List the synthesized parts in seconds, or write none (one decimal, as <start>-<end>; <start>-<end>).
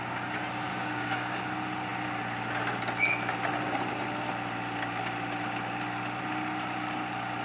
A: 0.7-1.4